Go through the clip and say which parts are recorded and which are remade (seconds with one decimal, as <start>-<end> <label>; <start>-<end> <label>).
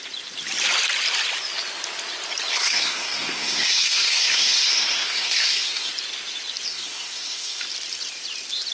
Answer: 0.0-2.5 recorded; 2.5-5.9 remade; 5.9-6.7 recorded; 6.7-7.6 remade; 7.6-8.7 recorded